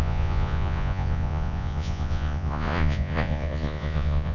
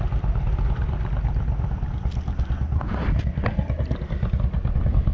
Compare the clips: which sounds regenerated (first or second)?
first